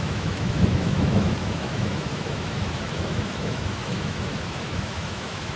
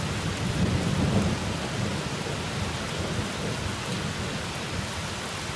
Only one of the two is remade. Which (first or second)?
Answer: first